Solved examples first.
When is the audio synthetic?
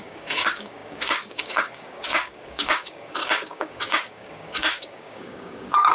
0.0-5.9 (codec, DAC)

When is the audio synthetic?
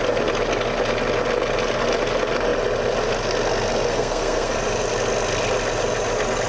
3.9-4.5 (codec, SNAC)